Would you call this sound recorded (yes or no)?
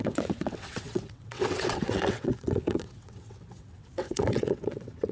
no